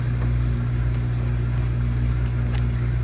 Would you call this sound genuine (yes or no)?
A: yes